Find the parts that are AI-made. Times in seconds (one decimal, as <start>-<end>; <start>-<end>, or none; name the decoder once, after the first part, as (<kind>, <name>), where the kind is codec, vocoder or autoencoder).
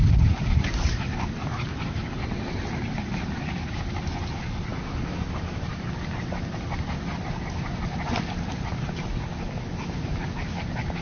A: none